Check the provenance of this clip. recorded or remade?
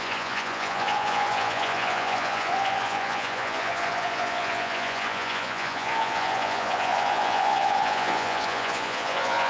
remade